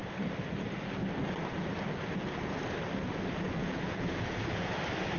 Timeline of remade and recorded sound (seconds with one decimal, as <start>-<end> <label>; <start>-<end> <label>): 0.0-3.6 recorded; 3.6-4.7 remade; 4.7-5.2 recorded